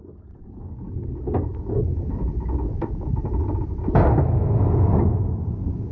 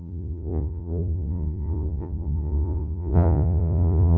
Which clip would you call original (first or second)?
first